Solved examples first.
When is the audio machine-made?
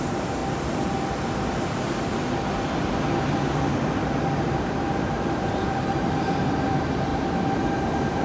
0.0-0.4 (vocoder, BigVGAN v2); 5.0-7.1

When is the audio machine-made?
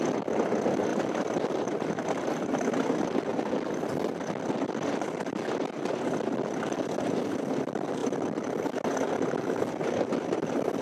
0.9-2.9 (vocoder, BigVGAN v2)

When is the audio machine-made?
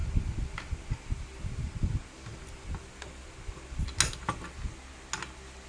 none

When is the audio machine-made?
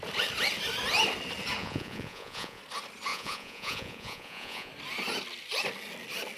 1.6-2.6 (vocoder, Vocos); 3.1-4.7